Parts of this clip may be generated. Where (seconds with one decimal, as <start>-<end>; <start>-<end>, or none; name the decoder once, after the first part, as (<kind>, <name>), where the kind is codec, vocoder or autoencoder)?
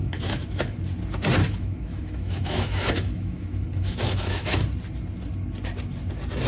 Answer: 0.0-0.8 (autoencoder, DAC-VAE); 1.4-4.6